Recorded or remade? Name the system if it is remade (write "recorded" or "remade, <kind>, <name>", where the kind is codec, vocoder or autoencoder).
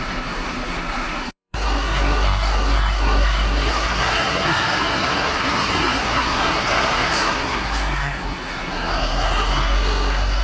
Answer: remade, codec, SNAC